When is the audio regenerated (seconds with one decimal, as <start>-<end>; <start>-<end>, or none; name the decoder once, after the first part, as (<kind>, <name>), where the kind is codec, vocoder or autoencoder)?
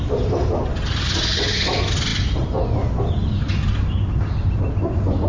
none